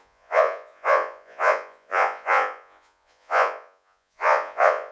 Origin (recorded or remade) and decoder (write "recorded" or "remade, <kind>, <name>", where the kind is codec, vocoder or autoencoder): remade, vocoder, Vocos